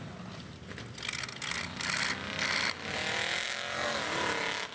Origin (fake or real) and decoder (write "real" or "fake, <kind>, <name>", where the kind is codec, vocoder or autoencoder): real